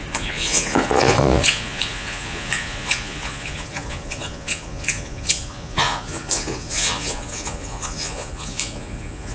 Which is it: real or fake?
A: fake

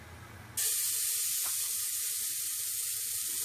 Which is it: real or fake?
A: real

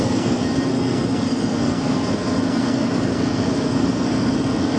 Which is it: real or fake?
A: fake